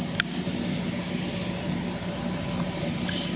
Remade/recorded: recorded